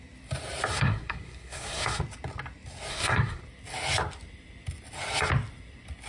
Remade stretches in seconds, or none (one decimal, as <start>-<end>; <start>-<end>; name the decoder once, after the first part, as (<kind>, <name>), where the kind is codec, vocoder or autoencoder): 0.7-2.0 (codec, SNAC); 2.9-3.4